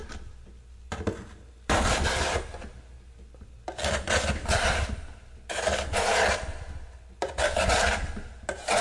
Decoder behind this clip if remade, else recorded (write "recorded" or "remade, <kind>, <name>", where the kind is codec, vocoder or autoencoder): recorded